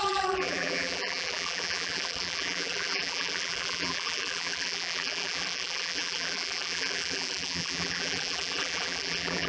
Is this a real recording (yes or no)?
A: no